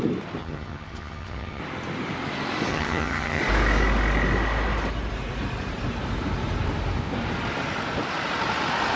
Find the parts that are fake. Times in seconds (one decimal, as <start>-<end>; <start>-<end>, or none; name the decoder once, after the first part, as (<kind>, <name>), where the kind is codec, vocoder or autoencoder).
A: 0.4-1.6 (vocoder, HiFi-GAN); 2.7-3.4